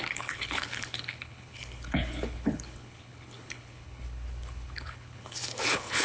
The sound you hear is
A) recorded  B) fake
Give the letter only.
B